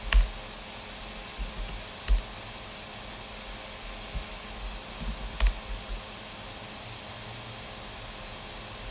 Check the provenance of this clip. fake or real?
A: real